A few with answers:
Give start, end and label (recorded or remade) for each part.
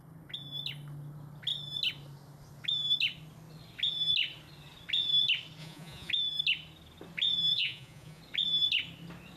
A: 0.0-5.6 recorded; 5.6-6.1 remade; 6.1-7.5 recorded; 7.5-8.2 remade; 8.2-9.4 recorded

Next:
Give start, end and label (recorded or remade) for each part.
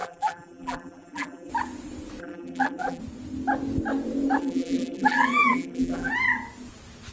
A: 0.0-1.5 remade; 1.5-2.2 recorded; 2.2-3.0 remade; 3.0-4.4 recorded; 4.4-6.1 remade; 6.1-7.1 recorded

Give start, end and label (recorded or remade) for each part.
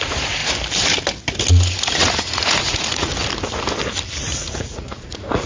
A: 0.0-0.4 remade; 0.4-1.5 recorded; 1.5-3.1 remade; 3.1-4.2 recorded; 4.2-5.5 remade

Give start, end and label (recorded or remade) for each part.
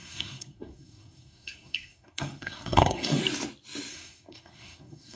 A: 0.0-3.2 remade; 3.2-3.9 recorded; 3.9-5.2 remade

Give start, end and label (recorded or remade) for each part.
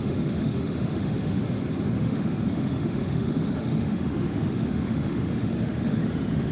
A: 0.0-1.4 remade; 1.4-2.0 recorded; 2.0-6.5 remade